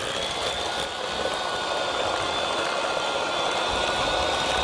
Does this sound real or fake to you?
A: real